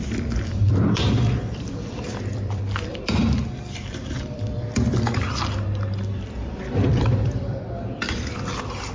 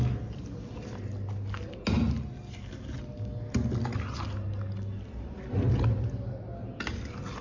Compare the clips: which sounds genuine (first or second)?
second